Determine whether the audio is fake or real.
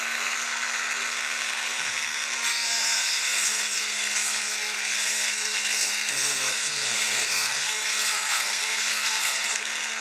fake